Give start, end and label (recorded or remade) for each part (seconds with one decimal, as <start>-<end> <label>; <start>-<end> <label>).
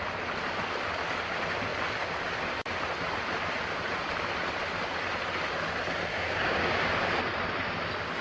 0.0-6.1 recorded; 6.1-6.9 remade; 6.9-8.2 recorded